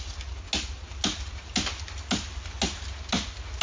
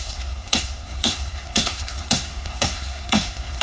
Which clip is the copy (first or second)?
second